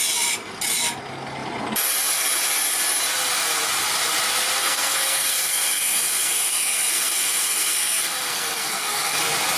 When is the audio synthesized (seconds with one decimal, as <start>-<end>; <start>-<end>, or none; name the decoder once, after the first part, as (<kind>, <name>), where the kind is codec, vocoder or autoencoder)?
4.6-9.2 (codec, SNAC)